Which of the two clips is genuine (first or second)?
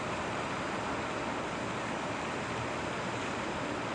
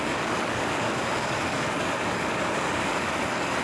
first